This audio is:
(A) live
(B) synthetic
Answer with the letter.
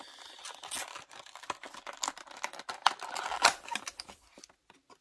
A